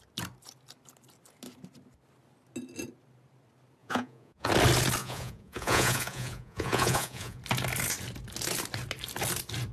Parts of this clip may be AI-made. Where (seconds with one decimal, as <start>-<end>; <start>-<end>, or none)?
3.8-4.5; 5.0-7.4